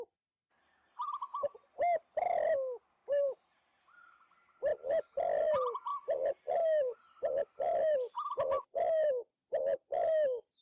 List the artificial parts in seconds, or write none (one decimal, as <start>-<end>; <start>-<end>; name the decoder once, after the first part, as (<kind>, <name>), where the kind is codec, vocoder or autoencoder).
3.0-3.6 (vocoder, BigVGAN v2)